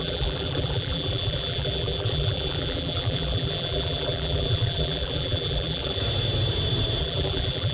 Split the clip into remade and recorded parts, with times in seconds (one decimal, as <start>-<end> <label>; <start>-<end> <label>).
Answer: 0.0-6.0 remade; 6.0-7.0 recorded; 7.0-7.7 remade